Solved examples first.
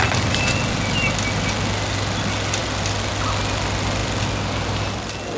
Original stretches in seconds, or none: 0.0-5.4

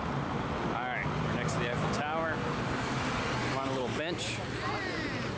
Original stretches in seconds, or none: 0.0-5.4

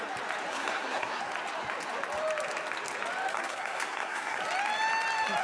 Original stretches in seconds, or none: 0.0-0.5; 1.2-3.3; 4.4-5.4